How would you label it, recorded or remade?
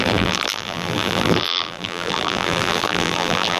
remade